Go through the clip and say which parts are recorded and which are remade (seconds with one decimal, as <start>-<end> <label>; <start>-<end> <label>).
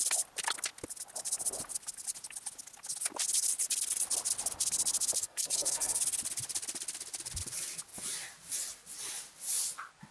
0.0-5.2 recorded; 5.2-6.0 remade; 6.0-10.1 recorded